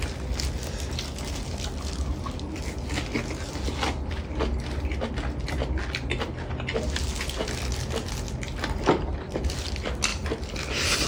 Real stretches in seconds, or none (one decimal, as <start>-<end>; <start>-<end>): 0.0-11.1